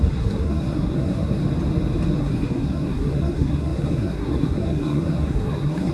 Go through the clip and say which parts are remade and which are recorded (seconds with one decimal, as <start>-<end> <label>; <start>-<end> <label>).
0.0-1.4 remade; 1.4-2.2 recorded; 2.2-5.9 remade